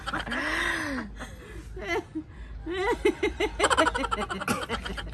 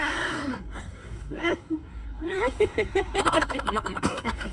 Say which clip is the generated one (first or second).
second